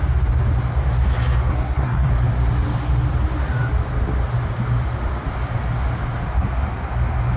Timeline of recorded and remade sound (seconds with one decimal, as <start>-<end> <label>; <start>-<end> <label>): 0.0-1.5 recorded; 1.5-2.1 remade; 2.1-7.4 recorded